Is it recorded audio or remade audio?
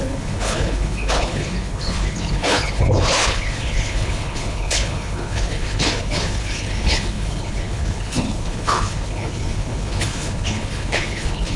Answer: remade